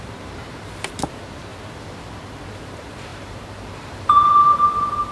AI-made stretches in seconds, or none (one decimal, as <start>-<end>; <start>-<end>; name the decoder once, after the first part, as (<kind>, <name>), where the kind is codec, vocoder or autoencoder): 0.0-1.5 (vocoder, BigVGAN v2); 2.2-5.1